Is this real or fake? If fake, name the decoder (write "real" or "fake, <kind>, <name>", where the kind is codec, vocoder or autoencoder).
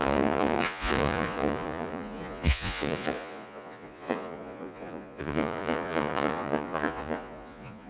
fake, vocoder, Vocos